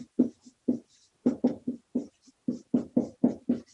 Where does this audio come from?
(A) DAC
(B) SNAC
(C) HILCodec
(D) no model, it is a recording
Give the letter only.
D